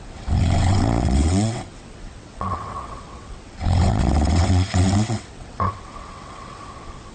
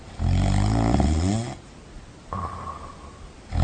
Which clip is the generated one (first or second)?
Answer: first